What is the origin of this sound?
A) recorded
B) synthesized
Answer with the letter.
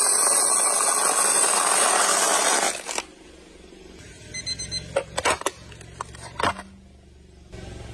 A